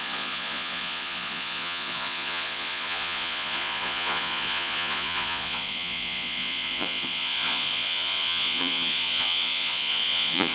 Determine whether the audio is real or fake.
fake